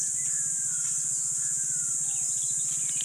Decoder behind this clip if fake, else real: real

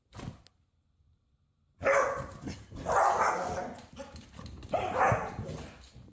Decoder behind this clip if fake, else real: real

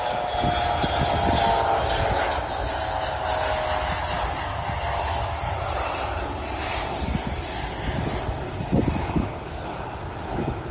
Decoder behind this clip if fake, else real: real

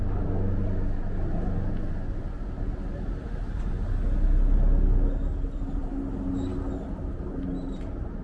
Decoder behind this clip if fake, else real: real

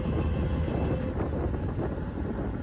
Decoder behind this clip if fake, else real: real